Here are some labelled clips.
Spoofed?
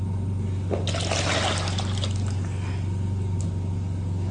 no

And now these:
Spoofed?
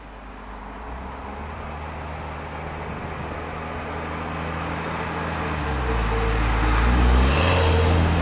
no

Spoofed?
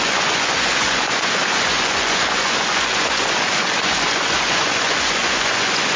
yes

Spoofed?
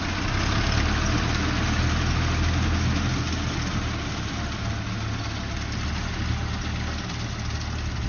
no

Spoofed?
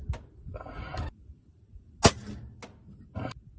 no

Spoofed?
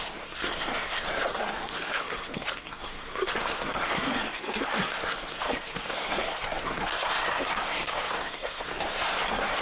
yes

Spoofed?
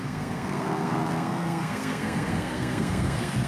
yes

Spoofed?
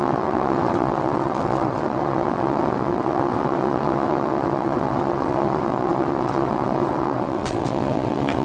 yes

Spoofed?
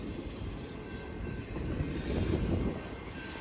no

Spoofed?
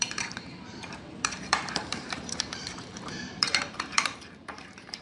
yes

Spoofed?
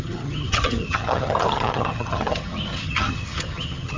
yes